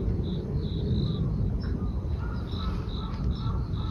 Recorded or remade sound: recorded